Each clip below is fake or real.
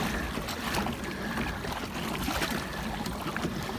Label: real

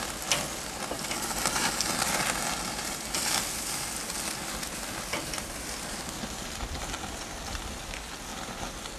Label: real